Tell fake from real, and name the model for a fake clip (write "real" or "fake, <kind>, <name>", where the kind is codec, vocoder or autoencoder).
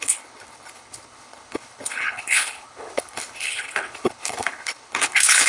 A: fake, codec, HILCodec